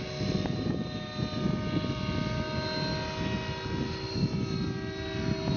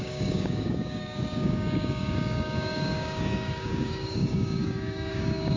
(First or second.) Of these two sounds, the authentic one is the first